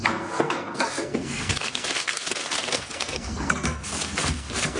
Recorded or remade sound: remade